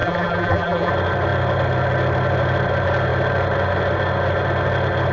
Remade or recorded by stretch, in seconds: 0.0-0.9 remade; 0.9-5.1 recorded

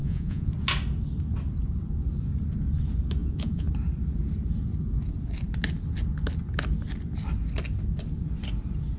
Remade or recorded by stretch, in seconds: 0.0-0.5 remade; 0.5-3.2 recorded; 3.2-3.7 remade; 3.7-9.0 recorded

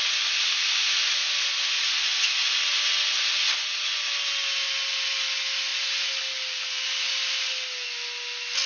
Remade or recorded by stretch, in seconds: 0.0-8.7 recorded

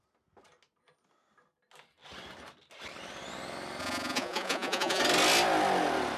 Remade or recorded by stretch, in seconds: 0.0-3.8 recorded; 3.8-5.0 remade; 5.0-6.2 recorded